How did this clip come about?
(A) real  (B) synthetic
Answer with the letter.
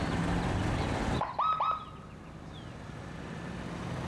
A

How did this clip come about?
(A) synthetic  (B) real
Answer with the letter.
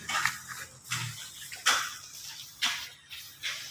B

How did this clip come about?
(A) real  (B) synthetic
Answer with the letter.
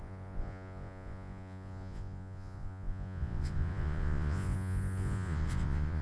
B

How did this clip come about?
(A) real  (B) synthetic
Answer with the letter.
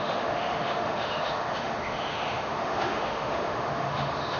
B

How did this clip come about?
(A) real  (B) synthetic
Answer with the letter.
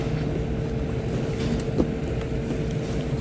A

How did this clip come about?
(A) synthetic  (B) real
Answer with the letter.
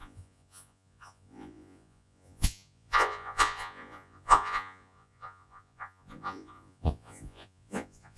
A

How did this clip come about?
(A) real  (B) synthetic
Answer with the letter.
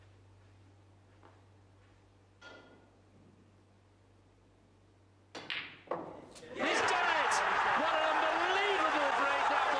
A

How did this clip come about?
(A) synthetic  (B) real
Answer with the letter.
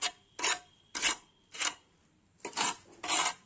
B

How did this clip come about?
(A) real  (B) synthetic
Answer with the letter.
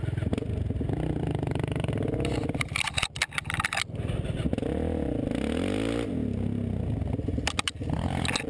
A